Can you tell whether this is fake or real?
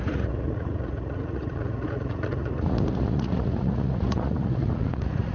fake